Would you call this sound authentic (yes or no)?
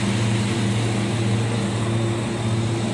yes